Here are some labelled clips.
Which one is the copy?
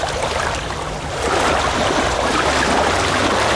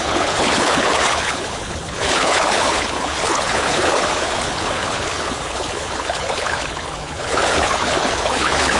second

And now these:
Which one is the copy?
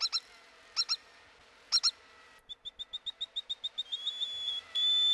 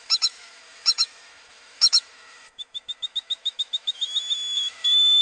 second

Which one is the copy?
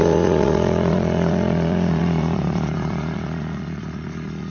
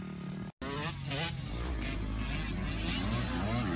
first